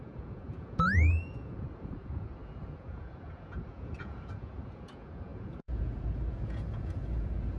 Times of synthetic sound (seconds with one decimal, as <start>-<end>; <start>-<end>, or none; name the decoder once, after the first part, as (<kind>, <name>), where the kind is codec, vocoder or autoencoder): 0.0-7.6 (vocoder, Vocos)